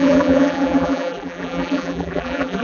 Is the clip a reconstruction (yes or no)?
yes